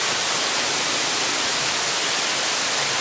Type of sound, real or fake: real